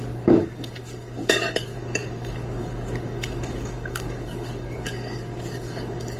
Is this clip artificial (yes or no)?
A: yes